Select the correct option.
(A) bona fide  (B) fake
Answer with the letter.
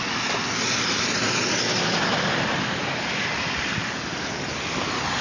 A